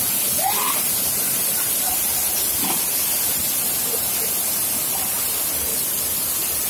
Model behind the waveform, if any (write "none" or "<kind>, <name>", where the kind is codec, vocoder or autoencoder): vocoder, BigVGAN v2